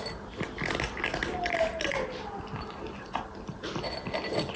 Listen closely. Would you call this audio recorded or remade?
recorded